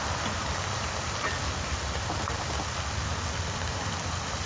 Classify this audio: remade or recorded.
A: recorded